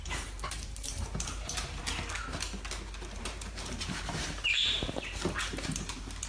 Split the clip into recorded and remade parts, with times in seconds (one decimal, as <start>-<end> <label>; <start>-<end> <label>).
0.0-1.8 remade; 1.8-3.2 recorded; 3.2-6.3 remade